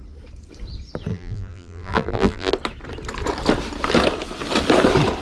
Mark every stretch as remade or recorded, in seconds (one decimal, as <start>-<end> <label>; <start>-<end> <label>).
0.0-1.1 recorded; 1.1-2.5 remade; 2.5-5.2 recorded